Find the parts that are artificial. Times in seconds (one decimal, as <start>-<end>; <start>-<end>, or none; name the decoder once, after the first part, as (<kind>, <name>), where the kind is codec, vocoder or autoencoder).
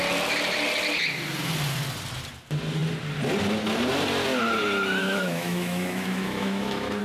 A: 5.0-7.0 (autoencoder, DAC-VAE)